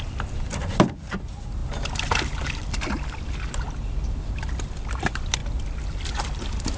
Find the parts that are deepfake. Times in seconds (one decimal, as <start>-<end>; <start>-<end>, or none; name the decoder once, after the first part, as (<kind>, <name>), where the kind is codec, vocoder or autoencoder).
0.0-5.4 (vocoder, BigVGAN v2); 5.9-6.8